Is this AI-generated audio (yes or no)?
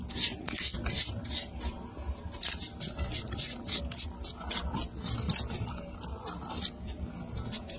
no